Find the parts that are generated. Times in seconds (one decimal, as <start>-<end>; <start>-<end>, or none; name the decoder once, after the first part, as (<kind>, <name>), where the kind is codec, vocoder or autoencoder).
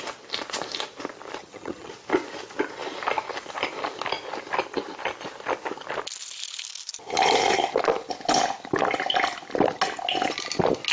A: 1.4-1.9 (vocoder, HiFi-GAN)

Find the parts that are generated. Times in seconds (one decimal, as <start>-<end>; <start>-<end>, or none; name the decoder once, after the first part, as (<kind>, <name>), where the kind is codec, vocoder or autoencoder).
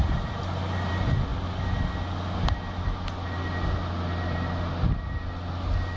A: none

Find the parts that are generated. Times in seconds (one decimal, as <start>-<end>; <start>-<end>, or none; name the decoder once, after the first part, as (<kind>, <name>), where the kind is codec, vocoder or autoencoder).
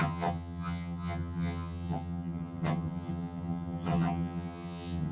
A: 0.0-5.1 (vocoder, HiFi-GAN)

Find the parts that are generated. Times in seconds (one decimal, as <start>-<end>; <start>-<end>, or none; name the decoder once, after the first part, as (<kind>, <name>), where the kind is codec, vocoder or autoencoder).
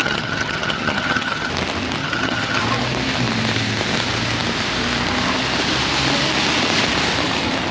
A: 0.0-1.5 (vocoder, HiFi-GAN); 2.0-2.6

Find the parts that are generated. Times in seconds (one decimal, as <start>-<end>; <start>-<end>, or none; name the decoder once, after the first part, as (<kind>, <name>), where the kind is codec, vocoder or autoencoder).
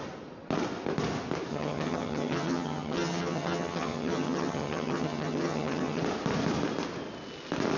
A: 1.5-6.0 (vocoder, HiFi-GAN)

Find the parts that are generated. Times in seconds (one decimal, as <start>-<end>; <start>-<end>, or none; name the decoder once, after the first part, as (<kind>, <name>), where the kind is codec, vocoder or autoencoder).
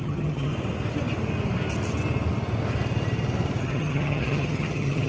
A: 0.0-0.5 (vocoder, HiFi-GAN); 3.6-5.1